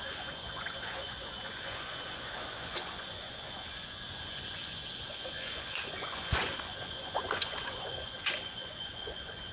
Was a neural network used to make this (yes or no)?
yes